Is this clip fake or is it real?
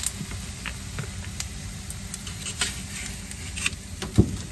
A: real